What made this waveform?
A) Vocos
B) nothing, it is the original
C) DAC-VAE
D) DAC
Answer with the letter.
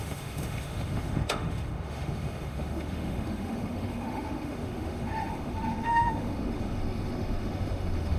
C